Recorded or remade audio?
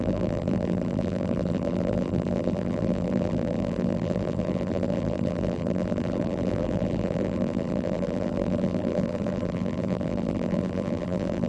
remade